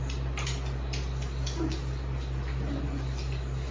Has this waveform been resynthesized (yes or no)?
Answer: no